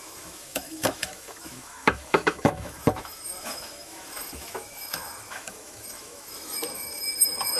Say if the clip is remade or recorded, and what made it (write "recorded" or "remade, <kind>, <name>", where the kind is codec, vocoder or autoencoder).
remade, autoencoder, DAC-VAE